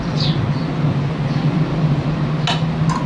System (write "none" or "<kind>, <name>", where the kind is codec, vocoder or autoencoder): none